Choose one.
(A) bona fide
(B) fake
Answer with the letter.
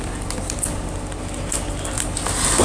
A